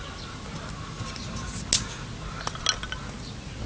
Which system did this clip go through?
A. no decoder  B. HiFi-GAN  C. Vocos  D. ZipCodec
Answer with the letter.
A